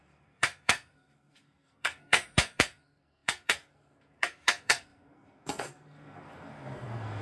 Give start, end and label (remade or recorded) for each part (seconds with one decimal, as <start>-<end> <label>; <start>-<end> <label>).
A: 0.0-7.2 remade